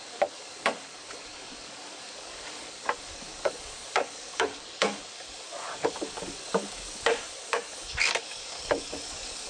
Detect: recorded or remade remade